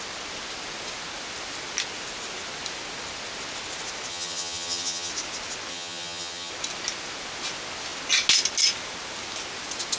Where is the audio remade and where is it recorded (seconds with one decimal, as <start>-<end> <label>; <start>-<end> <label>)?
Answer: 0.0-4.1 recorded; 4.1-5.1 remade; 5.1-5.7 recorded; 5.7-6.5 remade; 6.5-10.0 recorded